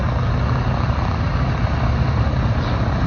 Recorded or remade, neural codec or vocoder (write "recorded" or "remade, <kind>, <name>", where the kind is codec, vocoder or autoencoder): recorded